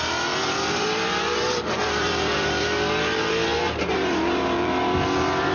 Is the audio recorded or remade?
remade